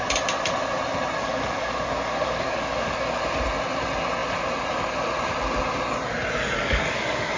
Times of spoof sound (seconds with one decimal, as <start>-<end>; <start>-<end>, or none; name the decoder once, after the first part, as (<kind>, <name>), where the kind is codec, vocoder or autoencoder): 1.2-3.2 (codec, DAC); 6.6-7.4